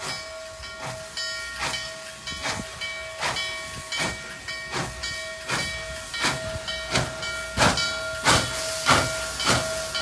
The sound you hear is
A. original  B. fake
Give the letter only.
A